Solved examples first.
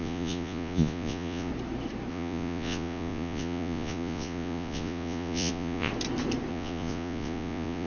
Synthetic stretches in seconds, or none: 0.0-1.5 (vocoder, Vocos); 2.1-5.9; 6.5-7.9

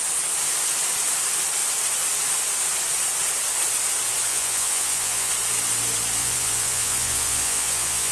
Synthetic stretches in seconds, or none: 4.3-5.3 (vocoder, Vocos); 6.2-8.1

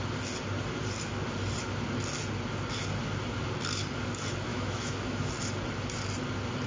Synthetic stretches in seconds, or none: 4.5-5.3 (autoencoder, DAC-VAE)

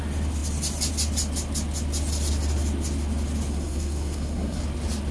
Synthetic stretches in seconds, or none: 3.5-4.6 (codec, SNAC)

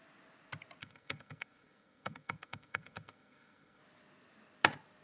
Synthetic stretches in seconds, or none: 0.8-3.8 (codec, SNAC)

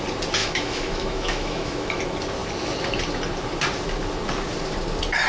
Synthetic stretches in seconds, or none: 0.4-2.0 (autoencoder, DAC-VAE)